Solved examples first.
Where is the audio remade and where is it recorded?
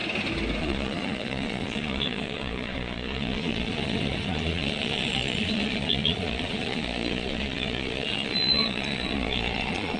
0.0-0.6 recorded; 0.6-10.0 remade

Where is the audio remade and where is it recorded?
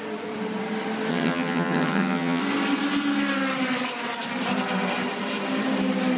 0.0-1.1 recorded; 1.1-2.4 remade; 2.4-6.2 recorded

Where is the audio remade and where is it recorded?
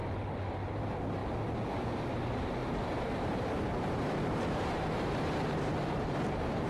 0.0-0.7 recorded; 0.7-1.2 remade; 1.2-1.7 recorded; 1.7-6.7 remade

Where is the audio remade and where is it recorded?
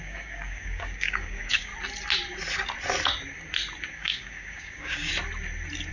0.0-1.7 remade; 1.7-3.9 recorded; 3.9-5.1 remade; 5.1-5.9 recorded